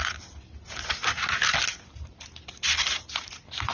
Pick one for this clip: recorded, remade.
recorded